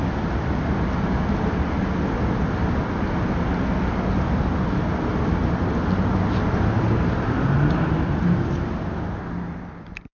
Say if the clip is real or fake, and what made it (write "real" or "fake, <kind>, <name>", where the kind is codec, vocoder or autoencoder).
real